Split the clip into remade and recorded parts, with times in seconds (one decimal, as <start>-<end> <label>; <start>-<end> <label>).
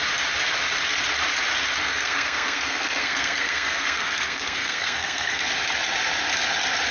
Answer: 0.0-1.8 recorded; 1.8-5.4 remade; 5.4-6.9 recorded